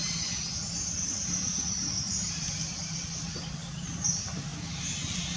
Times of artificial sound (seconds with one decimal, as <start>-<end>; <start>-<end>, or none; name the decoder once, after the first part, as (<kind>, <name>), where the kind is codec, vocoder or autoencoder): 0.0-3.6 (vocoder, BigVGAN v2); 4.1-5.4